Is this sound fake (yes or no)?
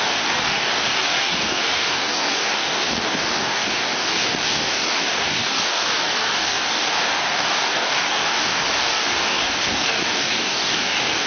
yes